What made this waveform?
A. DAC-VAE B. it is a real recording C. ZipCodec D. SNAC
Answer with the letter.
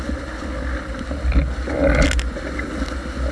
B